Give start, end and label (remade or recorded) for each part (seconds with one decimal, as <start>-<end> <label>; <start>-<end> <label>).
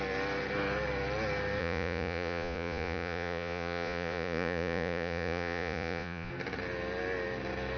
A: 0.0-1.6 recorded; 1.6-6.3 remade; 6.3-7.8 recorded